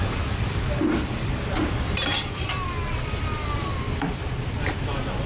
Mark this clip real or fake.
fake